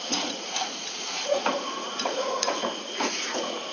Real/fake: fake